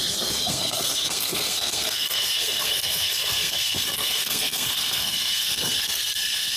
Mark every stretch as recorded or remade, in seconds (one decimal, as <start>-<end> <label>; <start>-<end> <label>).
0.0-6.6 remade